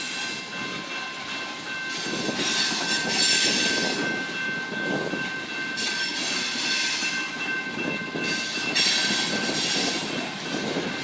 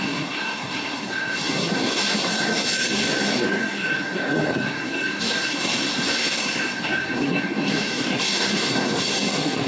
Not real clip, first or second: second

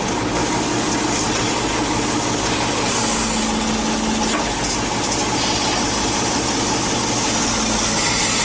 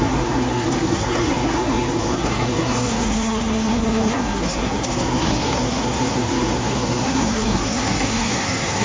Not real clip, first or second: second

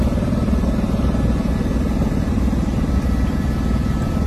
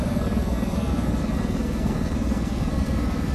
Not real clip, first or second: second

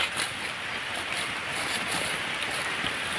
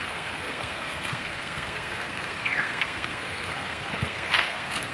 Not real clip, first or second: second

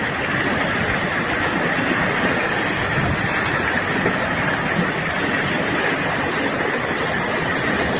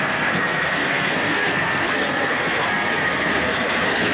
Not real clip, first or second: second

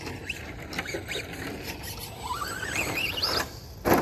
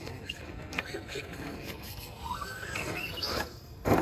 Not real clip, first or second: second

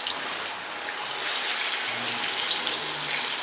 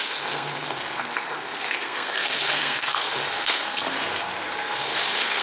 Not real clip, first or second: second